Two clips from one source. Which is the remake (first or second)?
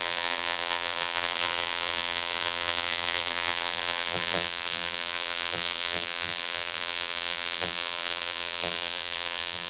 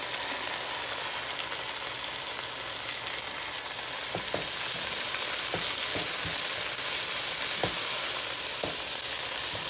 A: first